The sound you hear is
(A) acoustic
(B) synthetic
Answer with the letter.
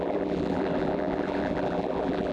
B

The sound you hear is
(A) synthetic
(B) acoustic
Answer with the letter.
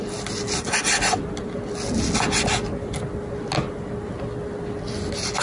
B